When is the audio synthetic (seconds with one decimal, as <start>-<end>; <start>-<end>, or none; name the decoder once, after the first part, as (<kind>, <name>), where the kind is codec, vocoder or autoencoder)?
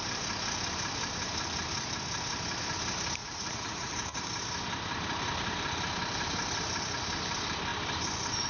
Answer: 3.2-3.9 (vocoder, Vocos)